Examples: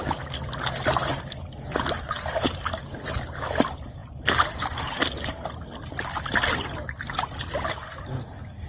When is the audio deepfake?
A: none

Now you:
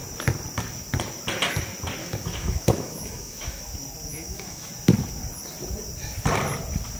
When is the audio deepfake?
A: 2.0-3.6 (autoencoder, DAC-VAE); 4.1-4.7

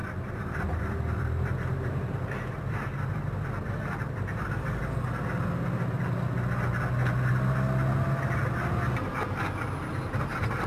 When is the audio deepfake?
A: 0.0-4.8 (vocoder, BigVGAN v2)

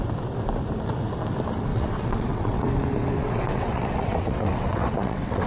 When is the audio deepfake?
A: 1.7-2.6 (vocoder, WaveNeXt); 3.2-5.5

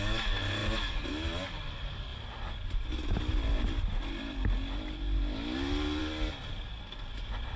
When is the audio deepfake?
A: none

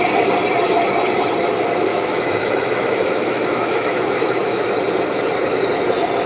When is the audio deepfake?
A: 1.9-4.6 (autoencoder, DAC-VAE)

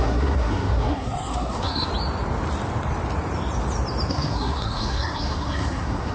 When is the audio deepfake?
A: 0.0-1.9 (codec, SNAC); 4.1-6.1

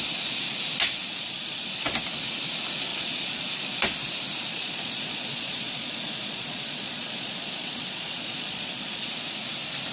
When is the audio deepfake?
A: 1.1-1.7 (vocoder, Vocos); 2.9-3.4; 4.5-9.1